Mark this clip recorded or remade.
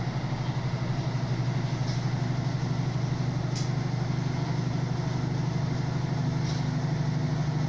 recorded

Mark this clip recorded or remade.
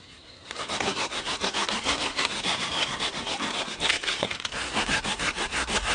remade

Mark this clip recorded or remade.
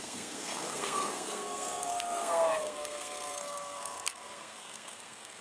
remade